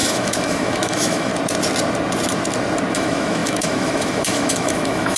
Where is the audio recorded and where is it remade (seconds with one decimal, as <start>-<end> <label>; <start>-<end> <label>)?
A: 0.0-1.3 remade; 1.3-2.9 recorded; 2.9-5.2 remade